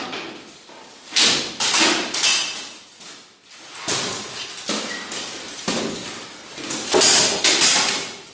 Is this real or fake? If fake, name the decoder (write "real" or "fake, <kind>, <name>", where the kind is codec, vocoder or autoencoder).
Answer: real